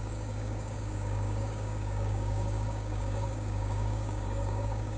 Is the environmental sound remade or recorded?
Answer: remade